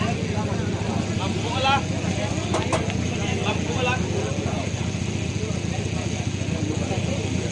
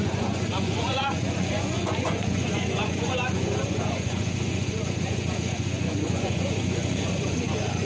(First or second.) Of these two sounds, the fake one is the second